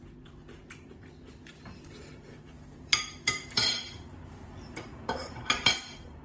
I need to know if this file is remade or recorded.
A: remade